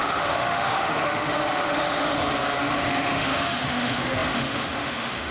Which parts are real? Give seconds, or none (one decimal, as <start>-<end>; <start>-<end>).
2.2-2.7